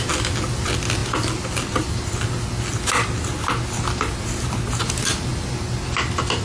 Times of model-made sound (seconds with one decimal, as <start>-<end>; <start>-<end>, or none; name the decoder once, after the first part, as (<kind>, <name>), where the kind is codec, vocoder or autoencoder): none